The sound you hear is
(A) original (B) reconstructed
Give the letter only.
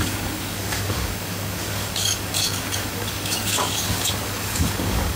B